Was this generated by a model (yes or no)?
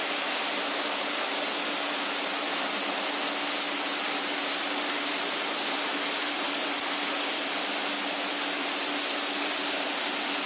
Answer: no